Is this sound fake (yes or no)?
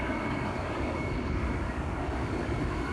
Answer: yes